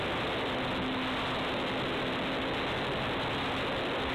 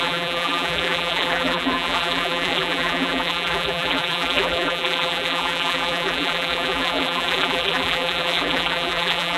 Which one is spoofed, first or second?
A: second